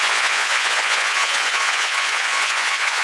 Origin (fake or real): fake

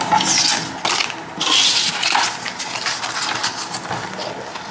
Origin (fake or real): real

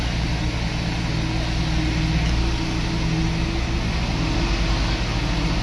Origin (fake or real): real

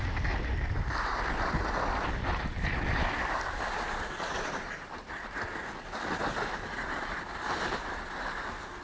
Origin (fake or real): real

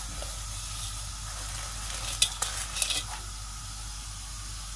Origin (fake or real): real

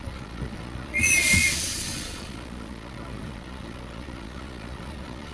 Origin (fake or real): fake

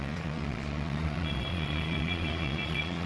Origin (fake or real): fake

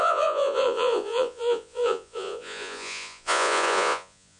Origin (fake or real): fake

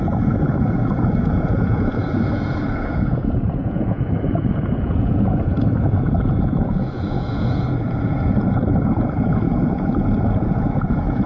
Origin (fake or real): fake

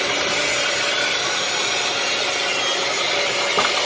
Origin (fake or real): real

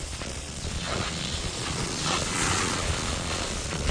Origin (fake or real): fake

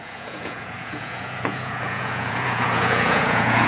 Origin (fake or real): fake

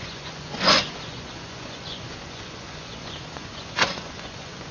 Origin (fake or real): fake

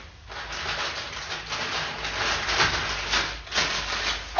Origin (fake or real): real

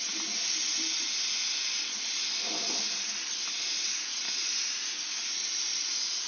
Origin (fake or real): real